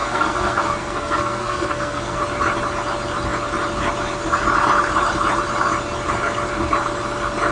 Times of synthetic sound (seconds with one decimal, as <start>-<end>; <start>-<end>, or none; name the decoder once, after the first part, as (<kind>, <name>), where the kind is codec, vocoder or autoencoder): 0.0-2.2 (codec, SNAC)